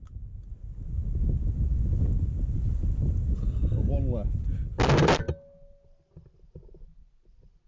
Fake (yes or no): no